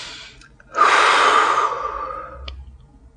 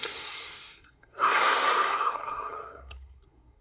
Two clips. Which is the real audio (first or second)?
first